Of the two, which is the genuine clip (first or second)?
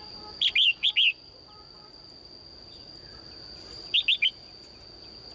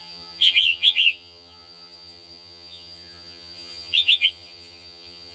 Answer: first